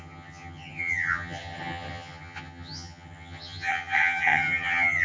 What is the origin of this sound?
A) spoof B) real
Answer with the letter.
A